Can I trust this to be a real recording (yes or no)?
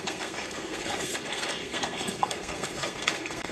no